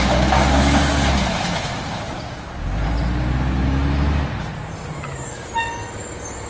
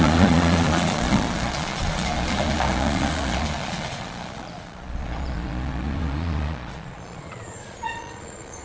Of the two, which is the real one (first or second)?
first